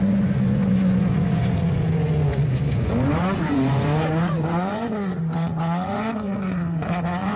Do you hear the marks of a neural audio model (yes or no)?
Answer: yes